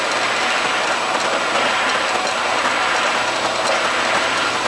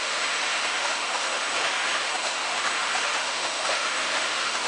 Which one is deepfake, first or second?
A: second